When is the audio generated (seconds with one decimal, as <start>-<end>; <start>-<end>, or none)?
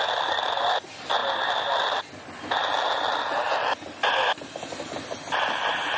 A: none